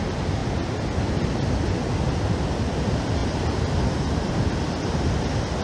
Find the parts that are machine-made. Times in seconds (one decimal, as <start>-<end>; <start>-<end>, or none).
none